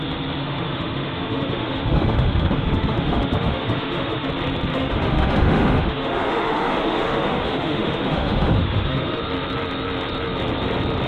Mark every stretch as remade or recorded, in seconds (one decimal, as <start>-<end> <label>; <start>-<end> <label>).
0.0-0.4 recorded; 0.4-4.3 remade; 4.3-4.7 recorded; 4.7-9.2 remade; 9.2-11.1 recorded